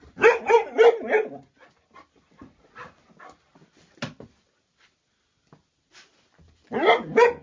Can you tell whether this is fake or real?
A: real